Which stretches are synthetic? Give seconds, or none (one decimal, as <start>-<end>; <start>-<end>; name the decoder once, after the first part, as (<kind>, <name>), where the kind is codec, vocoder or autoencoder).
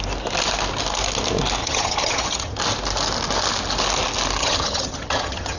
1.6-2.6 (vocoder, HiFi-GAN); 4.4-5.6